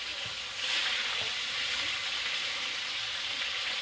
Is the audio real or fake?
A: real